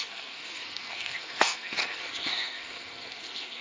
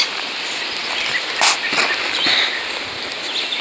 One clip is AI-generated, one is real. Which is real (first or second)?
second